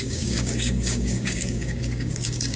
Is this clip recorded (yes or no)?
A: no